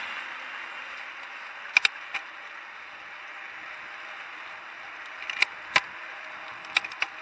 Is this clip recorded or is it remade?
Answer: recorded